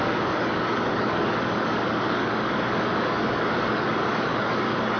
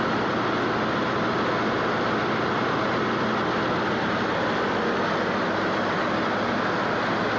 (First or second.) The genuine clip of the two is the second